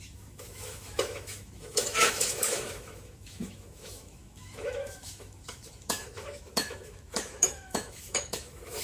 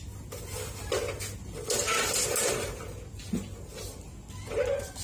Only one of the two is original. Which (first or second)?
second